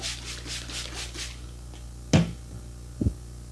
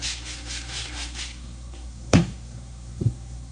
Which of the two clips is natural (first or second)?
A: first